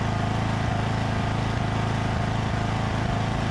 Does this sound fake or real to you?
real